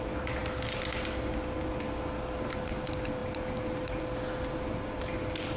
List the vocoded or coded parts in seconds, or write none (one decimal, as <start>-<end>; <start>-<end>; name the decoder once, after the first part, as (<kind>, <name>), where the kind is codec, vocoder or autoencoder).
none